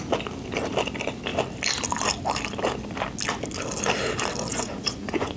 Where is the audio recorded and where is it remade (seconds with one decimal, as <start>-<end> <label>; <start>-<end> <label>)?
0.0-4.5 recorded; 4.5-5.4 remade